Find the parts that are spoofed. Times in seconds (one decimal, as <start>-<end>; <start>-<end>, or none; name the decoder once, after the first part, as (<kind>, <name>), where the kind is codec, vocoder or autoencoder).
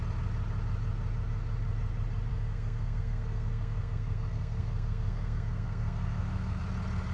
2.3-6.6 (codec, SNAC)